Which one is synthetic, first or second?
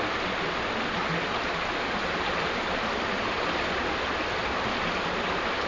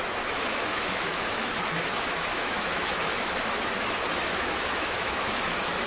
second